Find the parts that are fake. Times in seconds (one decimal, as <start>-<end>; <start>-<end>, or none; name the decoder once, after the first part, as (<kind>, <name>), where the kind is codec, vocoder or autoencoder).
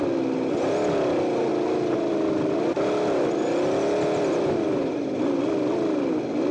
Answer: none